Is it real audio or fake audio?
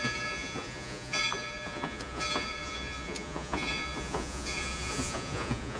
fake